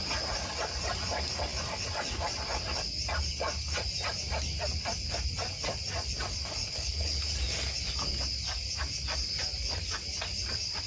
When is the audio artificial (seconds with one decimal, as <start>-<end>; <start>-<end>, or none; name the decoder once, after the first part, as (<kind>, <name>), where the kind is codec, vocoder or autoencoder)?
6.6-7.2 (codec, HILCodec)